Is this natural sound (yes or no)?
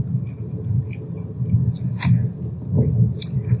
yes